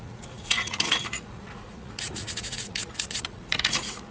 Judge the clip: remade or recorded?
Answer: remade